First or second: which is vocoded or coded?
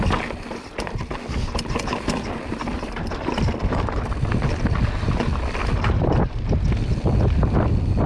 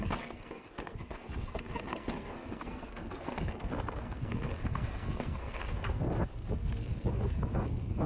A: second